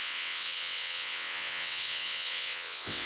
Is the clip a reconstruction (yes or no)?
yes